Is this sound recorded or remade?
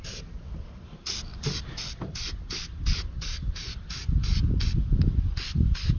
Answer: recorded